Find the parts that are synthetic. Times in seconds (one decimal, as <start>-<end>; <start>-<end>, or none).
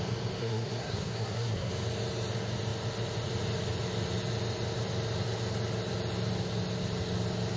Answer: 0.4-1.7